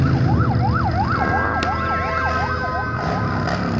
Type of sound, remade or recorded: recorded